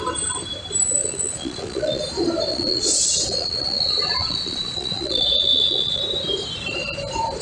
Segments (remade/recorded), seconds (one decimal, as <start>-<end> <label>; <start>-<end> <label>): 0.0-1.0 recorded; 1.0-2.0 remade; 2.0-2.5 recorded; 2.5-6.0 remade; 6.0-7.4 recorded